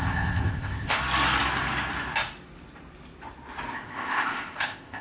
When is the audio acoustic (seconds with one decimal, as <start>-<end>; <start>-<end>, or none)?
1.0-3.7